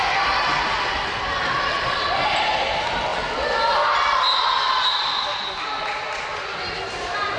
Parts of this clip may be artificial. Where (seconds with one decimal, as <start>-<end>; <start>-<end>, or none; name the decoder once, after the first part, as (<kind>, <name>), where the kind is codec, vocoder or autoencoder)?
none